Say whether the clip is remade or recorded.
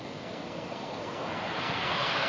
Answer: remade